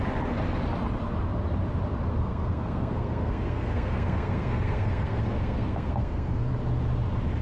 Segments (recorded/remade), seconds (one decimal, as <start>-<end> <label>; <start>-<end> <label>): 0.0-2.1 recorded; 2.1-6.5 remade; 6.5-7.4 recorded